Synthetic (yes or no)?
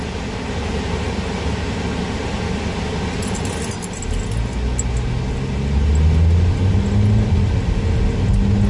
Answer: no